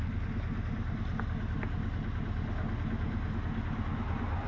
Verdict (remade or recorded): recorded